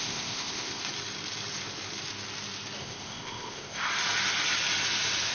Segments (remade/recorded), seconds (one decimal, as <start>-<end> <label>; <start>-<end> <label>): 0.0-0.8 remade; 0.8-2.8 recorded; 2.8-3.9 remade; 3.9-5.3 recorded